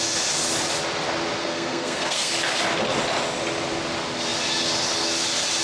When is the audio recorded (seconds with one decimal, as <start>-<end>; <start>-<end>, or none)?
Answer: 0.0-1.4; 2.3-5.6